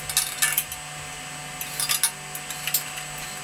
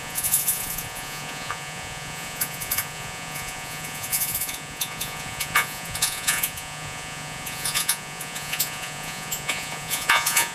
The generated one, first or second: second